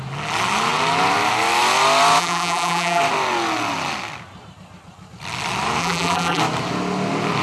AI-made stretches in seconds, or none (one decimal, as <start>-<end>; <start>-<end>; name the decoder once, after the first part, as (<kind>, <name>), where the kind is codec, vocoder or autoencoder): 2.2-3.0 (vocoder, BigVGAN v2); 5.8-6.4